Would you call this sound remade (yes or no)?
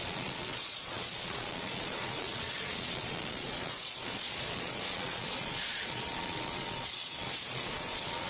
yes